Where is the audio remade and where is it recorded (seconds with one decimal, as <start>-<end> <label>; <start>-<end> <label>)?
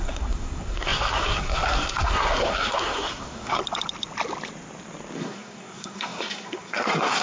0.0-3.6 remade; 3.6-5.2 recorded; 5.2-7.2 remade